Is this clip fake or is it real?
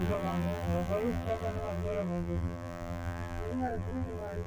fake